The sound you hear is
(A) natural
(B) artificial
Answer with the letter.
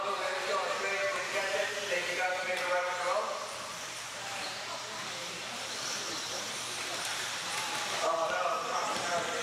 B